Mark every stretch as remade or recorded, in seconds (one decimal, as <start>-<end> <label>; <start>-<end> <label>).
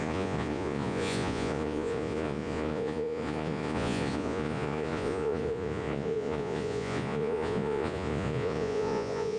0.0-9.4 remade